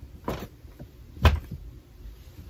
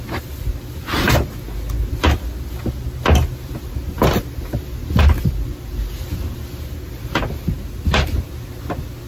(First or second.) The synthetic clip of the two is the first